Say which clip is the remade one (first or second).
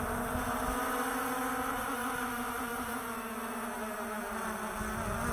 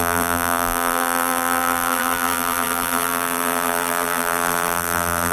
second